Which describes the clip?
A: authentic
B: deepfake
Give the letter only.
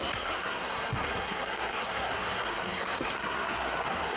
B